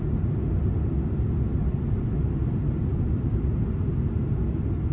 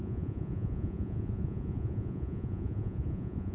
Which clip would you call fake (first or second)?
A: second